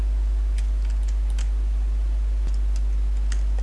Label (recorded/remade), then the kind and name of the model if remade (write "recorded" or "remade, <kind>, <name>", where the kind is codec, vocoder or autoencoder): recorded